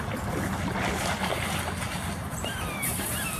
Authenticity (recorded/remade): recorded